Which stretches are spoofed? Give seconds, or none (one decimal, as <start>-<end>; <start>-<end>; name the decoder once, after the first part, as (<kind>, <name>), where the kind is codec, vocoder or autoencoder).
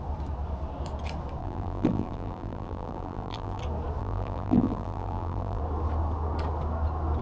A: 1.4-3.6 (vocoder, BigVGAN v2); 4.0-5.6